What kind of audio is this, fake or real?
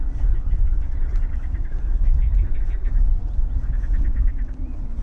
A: real